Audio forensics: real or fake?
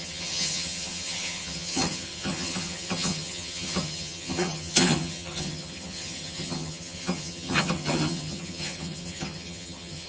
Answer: fake